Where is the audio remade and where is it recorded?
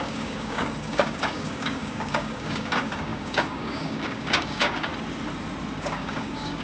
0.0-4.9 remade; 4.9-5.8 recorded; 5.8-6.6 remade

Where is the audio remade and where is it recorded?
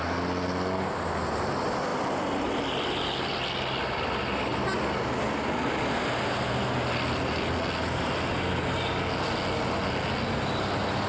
0.0-11.1 recorded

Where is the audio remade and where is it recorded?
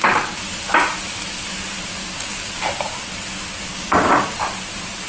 0.0-2.0 recorded; 2.0-2.5 remade; 2.5-3.7 recorded; 3.7-4.3 remade; 4.3-5.1 recorded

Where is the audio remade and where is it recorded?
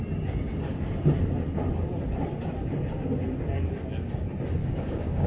0.0-4.6 recorded; 4.6-5.3 remade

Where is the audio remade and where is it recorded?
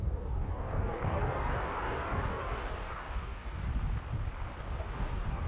0.0-3.6 remade; 3.6-4.6 recorded; 4.6-5.5 remade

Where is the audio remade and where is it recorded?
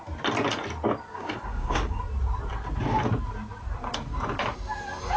0.0-1.1 recorded; 1.1-2.0 remade; 2.0-5.2 recorded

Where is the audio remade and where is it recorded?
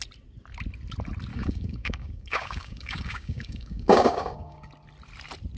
0.0-1.3 recorded; 1.3-4.7 remade; 4.7-5.6 recorded